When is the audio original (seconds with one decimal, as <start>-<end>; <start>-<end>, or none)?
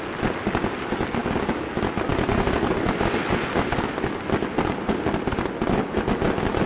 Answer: 0.0-6.7